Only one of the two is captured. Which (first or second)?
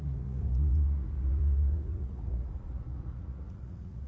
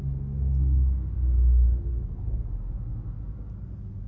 second